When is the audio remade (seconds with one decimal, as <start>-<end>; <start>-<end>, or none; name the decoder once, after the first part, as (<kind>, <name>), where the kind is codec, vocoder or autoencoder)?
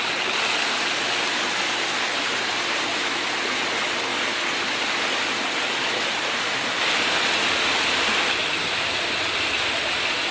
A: none